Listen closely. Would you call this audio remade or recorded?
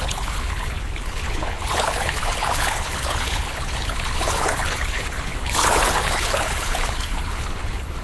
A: remade